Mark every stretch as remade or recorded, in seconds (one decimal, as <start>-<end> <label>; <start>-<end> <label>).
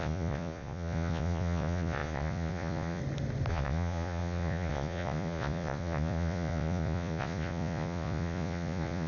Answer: 0.0-3.0 remade; 3.0-3.5 recorded; 3.5-9.1 remade